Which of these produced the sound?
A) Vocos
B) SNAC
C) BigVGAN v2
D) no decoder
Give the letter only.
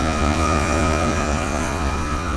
A